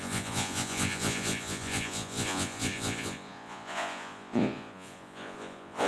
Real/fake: fake